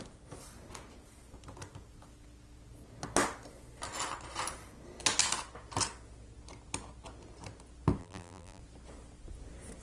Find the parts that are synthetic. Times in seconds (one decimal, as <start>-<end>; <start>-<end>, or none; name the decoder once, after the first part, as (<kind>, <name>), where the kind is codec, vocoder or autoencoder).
8.0-8.6 (vocoder, BigVGAN v2)